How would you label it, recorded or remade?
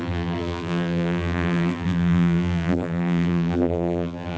remade